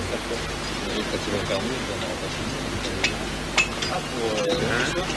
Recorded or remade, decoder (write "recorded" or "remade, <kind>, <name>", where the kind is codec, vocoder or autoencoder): recorded